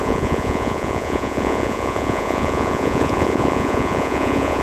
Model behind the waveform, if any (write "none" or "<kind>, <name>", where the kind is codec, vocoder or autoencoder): vocoder, Vocos